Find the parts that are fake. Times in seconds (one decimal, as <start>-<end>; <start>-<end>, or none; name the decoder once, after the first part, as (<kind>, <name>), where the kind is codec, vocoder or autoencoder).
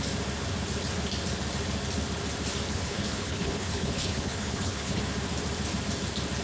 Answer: 2.7-5.0 (codec, HILCodec)